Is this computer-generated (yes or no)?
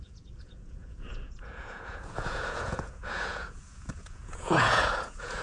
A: yes